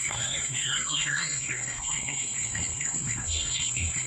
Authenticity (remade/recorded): remade